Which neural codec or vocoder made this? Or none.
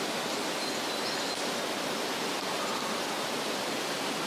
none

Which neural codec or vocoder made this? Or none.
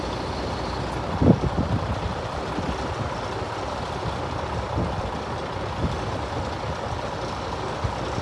none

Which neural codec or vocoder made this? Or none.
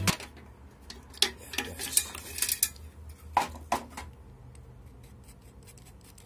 none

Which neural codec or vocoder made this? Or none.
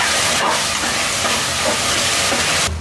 none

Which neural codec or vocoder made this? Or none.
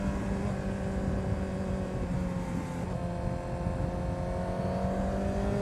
none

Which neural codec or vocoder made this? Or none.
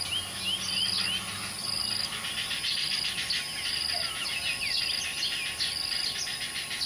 none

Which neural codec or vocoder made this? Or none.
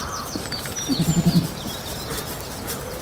vocoder, BigVGAN v2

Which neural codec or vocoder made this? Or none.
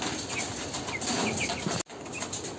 none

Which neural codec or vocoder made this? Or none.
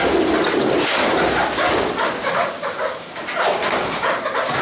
none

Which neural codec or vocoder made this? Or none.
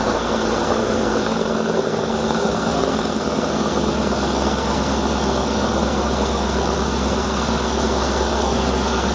codec, SNAC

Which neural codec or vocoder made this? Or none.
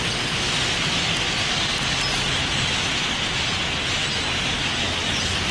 none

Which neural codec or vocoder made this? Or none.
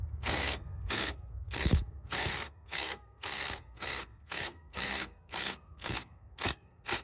codec, SNAC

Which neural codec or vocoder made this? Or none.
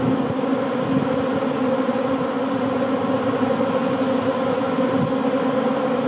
none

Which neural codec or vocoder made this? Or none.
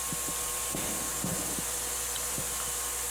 none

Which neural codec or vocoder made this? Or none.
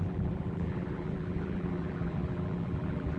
vocoder, BigVGAN v2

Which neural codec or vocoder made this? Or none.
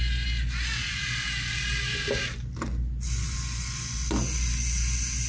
none